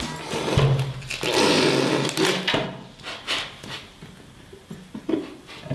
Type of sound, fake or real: real